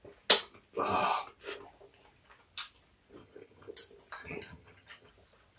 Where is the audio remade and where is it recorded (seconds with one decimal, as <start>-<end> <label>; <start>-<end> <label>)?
0.0-3.2 recorded; 3.2-3.7 remade; 3.7-4.2 recorded; 4.2-5.1 remade; 5.1-5.6 recorded